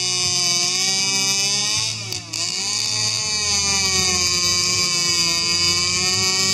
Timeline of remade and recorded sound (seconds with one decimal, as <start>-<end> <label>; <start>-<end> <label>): 0.0-6.5 recorded